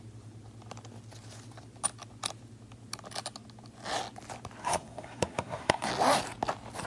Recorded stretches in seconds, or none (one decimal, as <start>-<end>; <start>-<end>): 0.0-4.6; 5.9-6.9